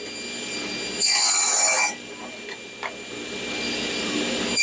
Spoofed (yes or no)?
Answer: no